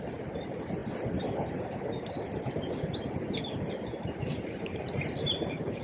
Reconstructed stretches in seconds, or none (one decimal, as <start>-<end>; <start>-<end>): 0.0-0.8; 4.0-5.8